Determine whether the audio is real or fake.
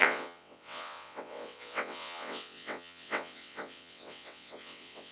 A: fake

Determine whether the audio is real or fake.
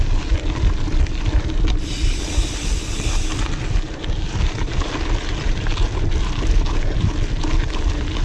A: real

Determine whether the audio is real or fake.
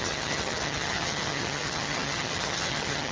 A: fake